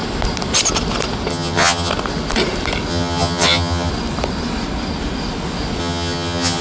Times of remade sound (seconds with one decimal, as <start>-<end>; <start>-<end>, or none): 1.3-1.9; 2.9-3.9; 5.8-6.6